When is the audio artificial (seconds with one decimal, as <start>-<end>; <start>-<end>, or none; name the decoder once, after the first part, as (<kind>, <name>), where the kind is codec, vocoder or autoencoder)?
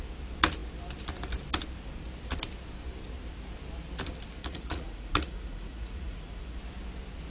4.4-6.6 (vocoder, Vocos)